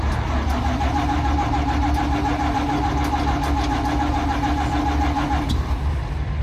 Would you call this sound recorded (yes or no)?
yes